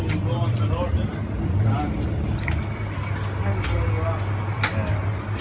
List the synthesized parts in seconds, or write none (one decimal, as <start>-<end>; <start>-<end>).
none

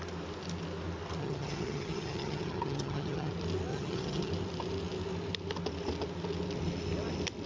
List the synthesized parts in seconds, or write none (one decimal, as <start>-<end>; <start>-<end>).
1.2-3.3; 3.7-4.3